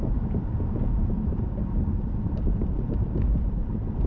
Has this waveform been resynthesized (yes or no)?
yes